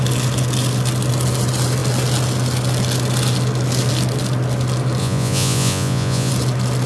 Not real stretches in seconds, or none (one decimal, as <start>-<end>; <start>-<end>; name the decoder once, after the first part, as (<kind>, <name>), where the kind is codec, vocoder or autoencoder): 5.0-6.3 (vocoder, Vocos)